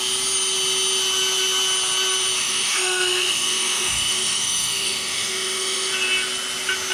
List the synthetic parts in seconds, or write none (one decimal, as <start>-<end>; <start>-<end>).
2.4-5.9